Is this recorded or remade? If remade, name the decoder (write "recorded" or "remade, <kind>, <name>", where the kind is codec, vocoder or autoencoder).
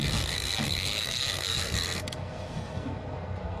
remade, codec, SNAC